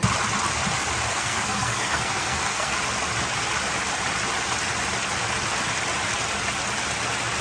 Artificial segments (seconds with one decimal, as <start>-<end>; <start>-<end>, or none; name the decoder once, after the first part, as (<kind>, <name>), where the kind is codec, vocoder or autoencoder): 1.1-2.8 (codec, SNAC)